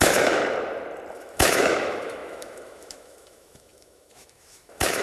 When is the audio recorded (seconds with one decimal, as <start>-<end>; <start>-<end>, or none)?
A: 0.4-1.1